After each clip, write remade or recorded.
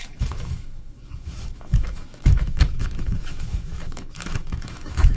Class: remade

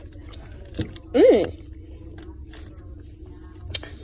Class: recorded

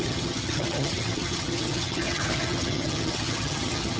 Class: remade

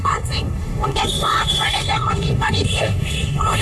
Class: remade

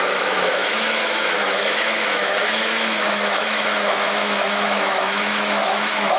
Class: remade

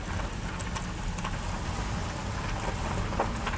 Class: recorded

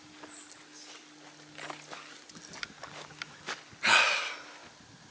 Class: recorded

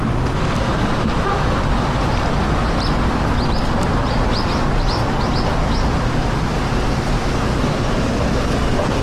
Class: recorded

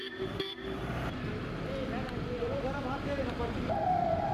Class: remade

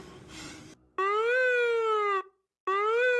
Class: recorded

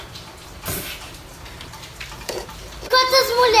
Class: remade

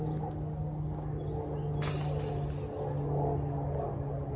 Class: recorded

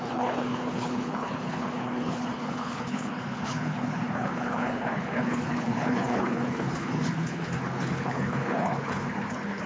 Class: remade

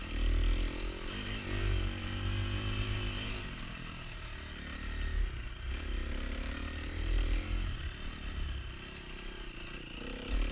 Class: recorded